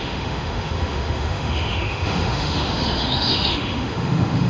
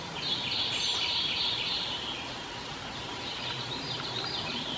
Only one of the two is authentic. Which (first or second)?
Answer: second